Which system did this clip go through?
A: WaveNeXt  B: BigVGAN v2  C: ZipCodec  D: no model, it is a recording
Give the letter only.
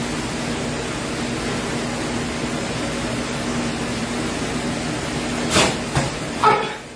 D